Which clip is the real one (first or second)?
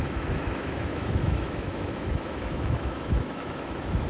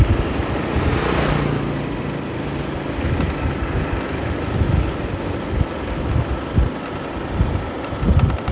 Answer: second